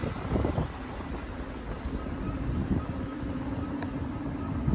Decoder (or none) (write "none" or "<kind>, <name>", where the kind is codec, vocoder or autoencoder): none